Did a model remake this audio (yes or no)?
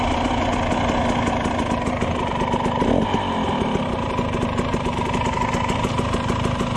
no